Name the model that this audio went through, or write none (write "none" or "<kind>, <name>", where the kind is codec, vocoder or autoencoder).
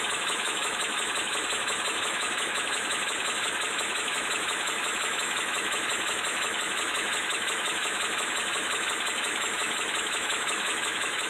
autoencoder, DAC-VAE